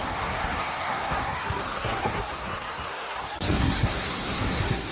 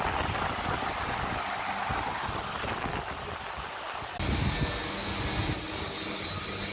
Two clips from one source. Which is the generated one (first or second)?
first